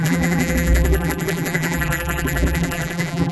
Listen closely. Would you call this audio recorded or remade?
remade